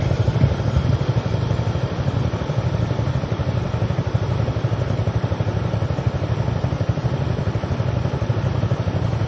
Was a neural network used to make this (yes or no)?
yes